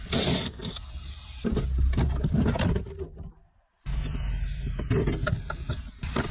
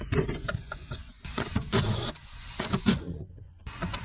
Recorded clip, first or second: first